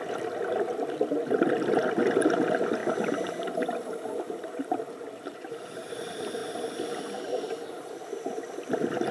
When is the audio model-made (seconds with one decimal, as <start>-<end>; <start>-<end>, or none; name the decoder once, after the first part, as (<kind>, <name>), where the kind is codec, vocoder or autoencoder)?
2.8-6.0 (vocoder, BigVGAN v2)